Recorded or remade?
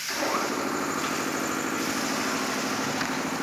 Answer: recorded